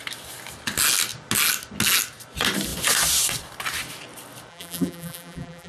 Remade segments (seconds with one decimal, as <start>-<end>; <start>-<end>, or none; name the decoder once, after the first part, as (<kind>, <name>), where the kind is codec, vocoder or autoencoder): 4.5-5.7 (vocoder, BigVGAN v2)